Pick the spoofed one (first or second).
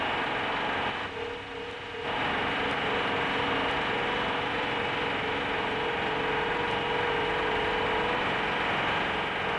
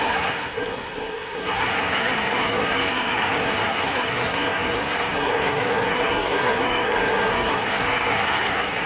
second